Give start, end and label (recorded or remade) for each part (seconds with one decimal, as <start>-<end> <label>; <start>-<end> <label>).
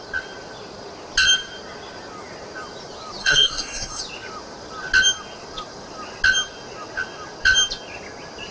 0.0-3.2 recorded; 3.2-4.0 remade; 4.0-8.5 recorded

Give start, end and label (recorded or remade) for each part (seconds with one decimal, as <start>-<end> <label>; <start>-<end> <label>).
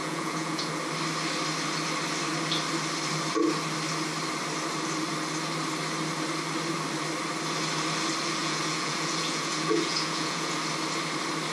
0.0-0.7 remade; 0.7-8.4 recorded; 8.4-10.6 remade; 10.6-11.5 recorded